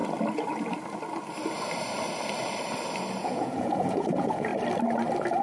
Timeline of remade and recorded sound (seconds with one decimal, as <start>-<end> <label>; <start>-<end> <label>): 0.0-3.2 recorded; 3.2-4.5 remade; 4.5-5.4 recorded